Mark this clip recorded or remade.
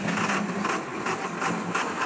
recorded